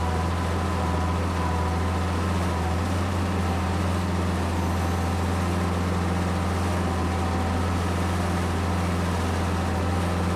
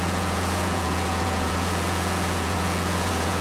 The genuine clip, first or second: first